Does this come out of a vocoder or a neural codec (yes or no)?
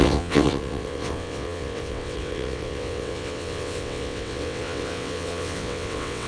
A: yes